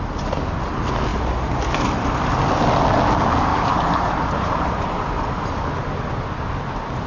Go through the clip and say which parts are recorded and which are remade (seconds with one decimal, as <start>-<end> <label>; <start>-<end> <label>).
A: 0.0-3.5 recorded; 3.5-4.8 remade; 4.8-7.1 recorded